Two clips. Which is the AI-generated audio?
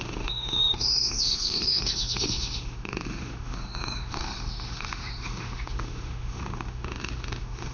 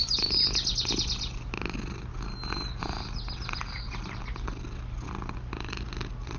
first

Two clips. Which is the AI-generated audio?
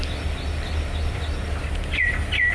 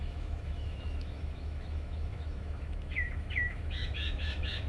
second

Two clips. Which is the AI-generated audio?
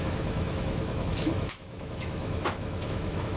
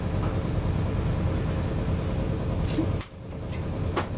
first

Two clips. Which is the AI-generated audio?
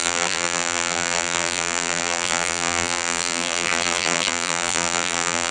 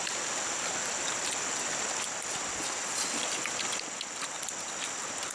first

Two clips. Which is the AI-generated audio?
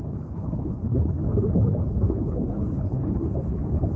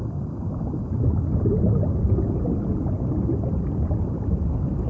first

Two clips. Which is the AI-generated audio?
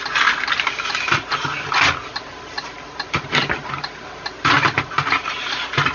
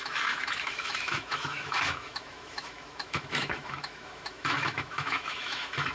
second